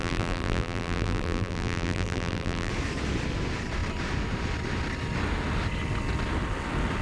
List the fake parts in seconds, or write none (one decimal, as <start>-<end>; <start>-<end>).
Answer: 0.0-2.7